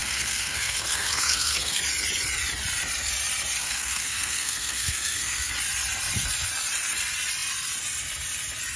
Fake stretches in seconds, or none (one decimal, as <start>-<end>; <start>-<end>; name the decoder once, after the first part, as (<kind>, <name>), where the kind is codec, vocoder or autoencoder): 0.0-1.8 (codec, SNAC); 3.6-5.5